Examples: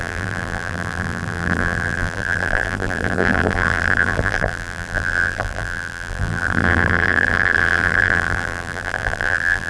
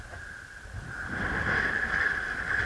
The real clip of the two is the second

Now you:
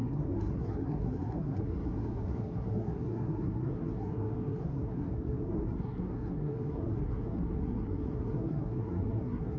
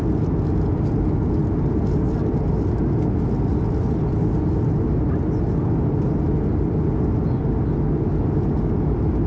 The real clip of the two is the second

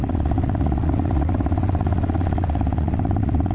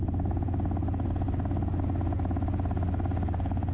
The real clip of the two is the second